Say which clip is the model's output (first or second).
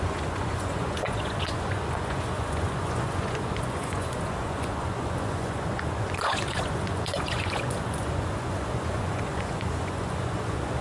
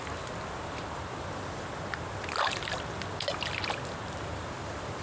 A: first